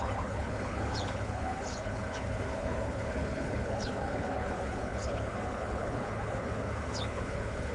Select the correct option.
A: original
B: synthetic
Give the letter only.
B